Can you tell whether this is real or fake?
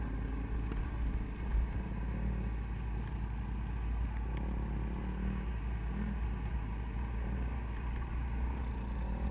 real